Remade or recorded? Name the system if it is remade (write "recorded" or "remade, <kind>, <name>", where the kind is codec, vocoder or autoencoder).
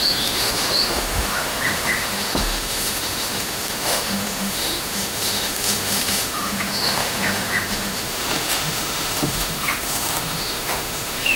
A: remade, autoencoder, DAC-VAE